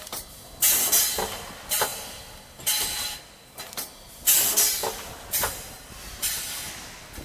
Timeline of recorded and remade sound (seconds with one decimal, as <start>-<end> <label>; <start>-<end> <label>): 0.0-7.2 recorded